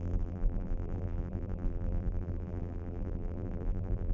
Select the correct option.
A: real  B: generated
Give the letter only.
B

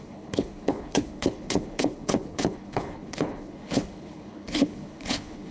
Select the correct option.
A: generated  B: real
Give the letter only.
A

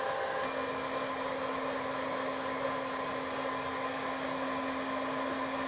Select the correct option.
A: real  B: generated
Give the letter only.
A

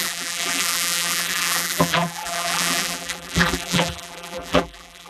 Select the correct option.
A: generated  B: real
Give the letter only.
A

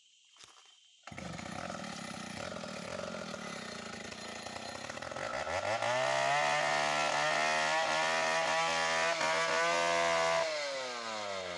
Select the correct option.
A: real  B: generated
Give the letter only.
A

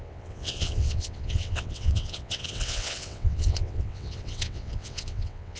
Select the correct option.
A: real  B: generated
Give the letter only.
B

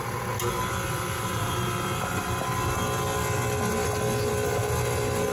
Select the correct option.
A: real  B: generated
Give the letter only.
A